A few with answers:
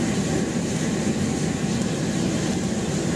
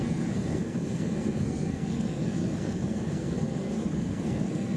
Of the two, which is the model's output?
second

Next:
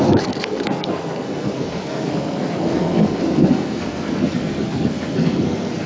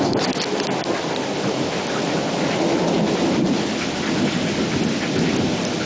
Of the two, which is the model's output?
first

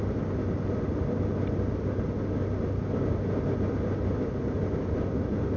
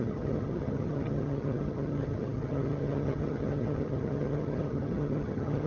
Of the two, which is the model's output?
second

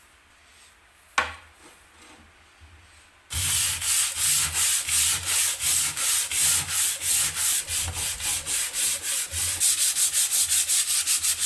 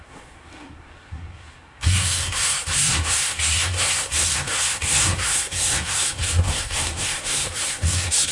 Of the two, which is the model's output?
second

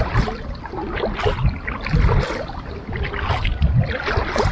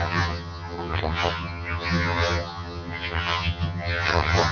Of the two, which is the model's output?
second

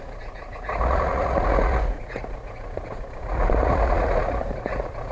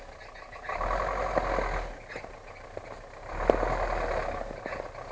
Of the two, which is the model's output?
first